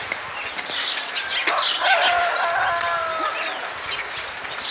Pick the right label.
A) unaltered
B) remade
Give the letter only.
A